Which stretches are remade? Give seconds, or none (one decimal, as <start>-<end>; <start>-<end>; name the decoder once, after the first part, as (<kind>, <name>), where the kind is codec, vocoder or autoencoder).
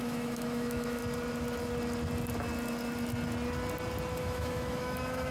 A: 0.0-1.0 (autoencoder, DAC-VAE); 4.2-5.3